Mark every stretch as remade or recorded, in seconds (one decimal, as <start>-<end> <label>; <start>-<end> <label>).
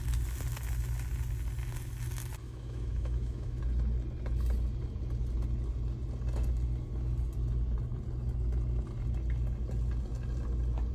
0.0-2.4 recorded; 2.4-3.6 remade; 3.6-10.9 recorded